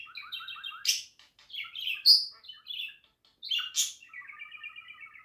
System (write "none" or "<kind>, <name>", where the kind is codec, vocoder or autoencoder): none